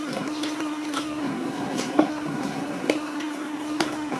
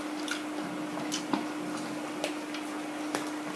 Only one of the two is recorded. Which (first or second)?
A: second